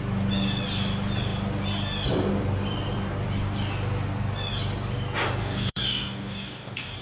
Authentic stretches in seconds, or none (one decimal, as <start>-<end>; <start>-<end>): 0.0-5.4